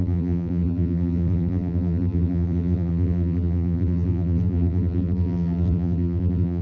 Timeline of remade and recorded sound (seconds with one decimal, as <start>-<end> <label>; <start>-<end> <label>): 0.0-6.6 remade